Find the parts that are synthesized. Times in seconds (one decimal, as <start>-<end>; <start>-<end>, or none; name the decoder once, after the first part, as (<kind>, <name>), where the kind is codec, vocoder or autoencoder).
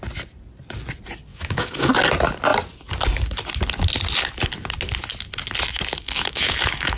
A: 1.3-1.9 (autoencoder, DAC-VAE); 6.0-7.0